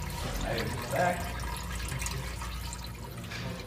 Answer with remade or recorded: recorded